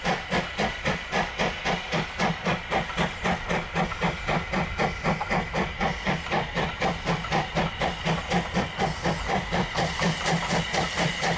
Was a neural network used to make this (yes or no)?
no